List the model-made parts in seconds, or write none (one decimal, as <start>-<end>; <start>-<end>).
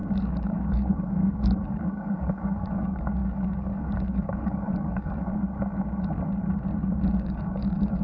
0.0-5.3; 7.1-8.0